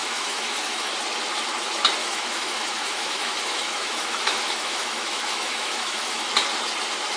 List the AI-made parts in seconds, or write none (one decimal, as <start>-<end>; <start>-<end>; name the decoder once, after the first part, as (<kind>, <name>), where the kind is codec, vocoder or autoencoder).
0.0-0.9 (autoencoder, DAC-VAE); 2.0-6.3